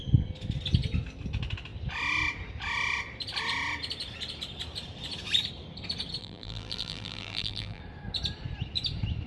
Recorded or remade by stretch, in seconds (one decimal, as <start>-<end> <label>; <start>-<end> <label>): 0.0-6.2 recorded; 6.2-7.8 remade; 7.8-9.3 recorded

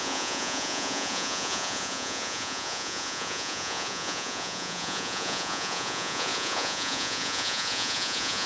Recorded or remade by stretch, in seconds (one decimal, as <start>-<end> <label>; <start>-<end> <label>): 0.0-8.5 remade

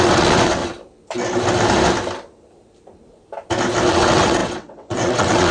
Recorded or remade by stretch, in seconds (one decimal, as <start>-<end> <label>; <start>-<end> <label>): 0.0-0.6 remade; 0.6-3.9 recorded; 3.9-5.5 remade

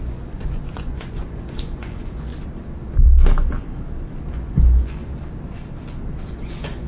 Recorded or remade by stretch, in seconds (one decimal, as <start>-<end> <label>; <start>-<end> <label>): 0.0-2.3 remade; 2.3-4.3 recorded; 4.3-5.0 remade; 5.0-6.3 recorded; 6.3-6.9 remade

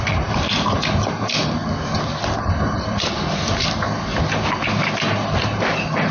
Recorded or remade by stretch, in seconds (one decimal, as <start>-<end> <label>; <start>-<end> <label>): 0.0-6.1 recorded

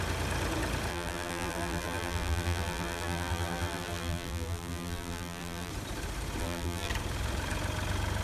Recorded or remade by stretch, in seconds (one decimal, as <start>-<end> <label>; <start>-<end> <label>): 0.0-0.9 recorded; 0.9-5.7 remade; 5.7-6.4 recorded; 6.4-6.9 remade; 6.9-8.2 recorded

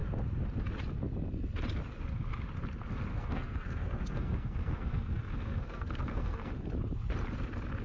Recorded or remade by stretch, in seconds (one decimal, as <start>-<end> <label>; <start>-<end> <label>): 0.0-3.1 recorded; 3.1-6.5 remade; 6.5-7.8 recorded

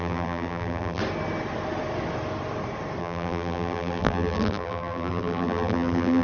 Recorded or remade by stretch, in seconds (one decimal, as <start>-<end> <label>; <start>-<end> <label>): 0.0-1.0 remade; 1.0-3.0 recorded; 3.0-6.2 remade